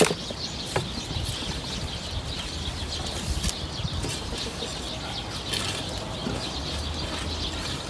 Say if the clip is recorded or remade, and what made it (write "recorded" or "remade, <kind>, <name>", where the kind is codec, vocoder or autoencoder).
recorded